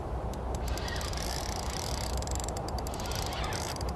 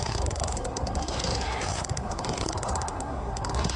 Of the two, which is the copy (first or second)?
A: second